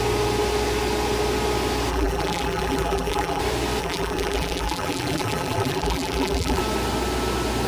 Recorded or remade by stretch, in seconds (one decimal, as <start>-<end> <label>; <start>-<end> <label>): 0.0-1.9 recorded; 1.9-3.4 remade; 3.4-3.8 recorded; 3.8-6.6 remade; 6.6-7.7 recorded